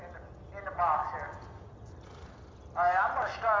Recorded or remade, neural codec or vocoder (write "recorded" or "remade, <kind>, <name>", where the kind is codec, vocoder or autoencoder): recorded